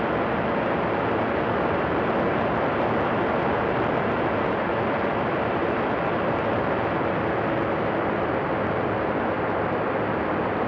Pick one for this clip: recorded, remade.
recorded